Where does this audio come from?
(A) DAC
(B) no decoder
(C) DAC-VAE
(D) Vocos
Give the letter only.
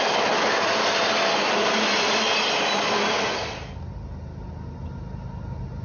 B